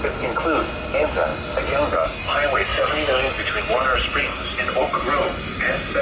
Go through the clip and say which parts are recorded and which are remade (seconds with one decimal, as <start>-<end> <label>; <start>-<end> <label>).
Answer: 0.0-6.0 recorded